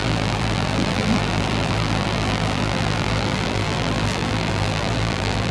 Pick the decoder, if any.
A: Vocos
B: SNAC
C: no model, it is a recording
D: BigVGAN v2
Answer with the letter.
D